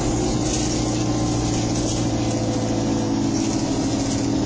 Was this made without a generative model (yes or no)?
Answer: yes